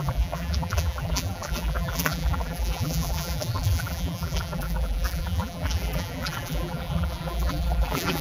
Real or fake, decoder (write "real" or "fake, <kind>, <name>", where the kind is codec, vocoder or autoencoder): fake, vocoder, BigVGAN v2